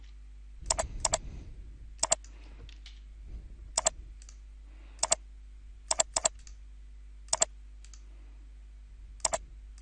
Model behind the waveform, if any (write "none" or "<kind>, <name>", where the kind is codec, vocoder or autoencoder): none